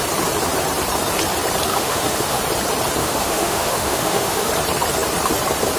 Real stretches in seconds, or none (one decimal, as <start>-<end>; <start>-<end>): 0.0-1.7; 2.4-3.0; 4.5-5.8